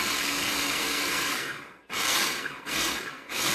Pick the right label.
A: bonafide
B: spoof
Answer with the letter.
B